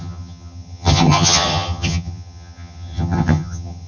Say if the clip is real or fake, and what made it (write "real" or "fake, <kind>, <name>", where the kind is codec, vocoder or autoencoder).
fake, vocoder, HiFi-GAN